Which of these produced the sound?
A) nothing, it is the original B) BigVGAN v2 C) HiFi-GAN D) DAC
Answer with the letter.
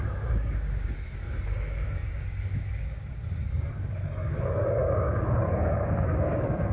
D